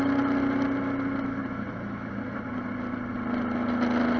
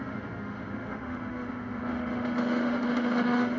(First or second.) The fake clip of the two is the second